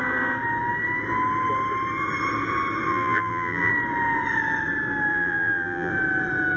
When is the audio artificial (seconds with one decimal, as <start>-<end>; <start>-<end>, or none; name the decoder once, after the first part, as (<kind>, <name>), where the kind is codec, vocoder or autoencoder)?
2.9-3.7 (vocoder, BigVGAN v2); 5.1-5.9